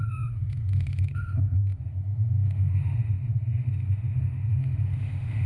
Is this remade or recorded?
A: remade